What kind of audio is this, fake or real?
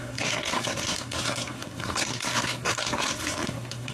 fake